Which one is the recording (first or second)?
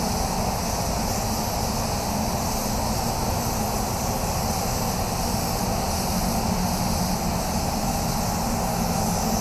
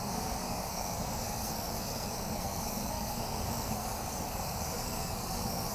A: first